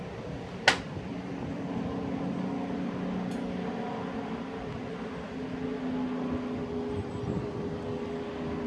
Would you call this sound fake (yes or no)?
no